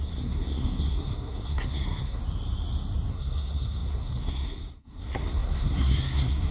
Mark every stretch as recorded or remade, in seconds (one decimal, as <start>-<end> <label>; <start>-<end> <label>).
0.0-2.2 remade; 2.2-3.1 recorded; 3.1-6.5 remade